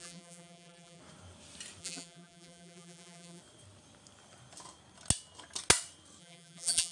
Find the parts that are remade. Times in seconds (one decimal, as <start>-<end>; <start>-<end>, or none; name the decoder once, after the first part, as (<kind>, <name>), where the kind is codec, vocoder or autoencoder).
0.0-1.0 (vocoder, BigVGAN v2); 1.8-3.4; 6.2-6.9